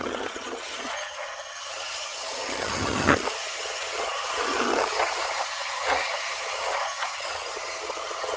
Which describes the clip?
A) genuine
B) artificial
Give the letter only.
B